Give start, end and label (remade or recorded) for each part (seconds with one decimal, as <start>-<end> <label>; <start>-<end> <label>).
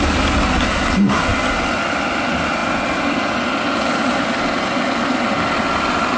0.0-6.2 recorded